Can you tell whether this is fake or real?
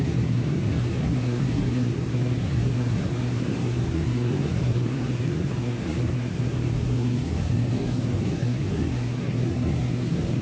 fake